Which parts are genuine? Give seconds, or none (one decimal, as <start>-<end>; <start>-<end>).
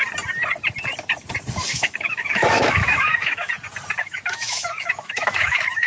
0.0-1.7; 3.5-4.0